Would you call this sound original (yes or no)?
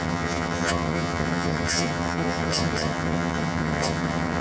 no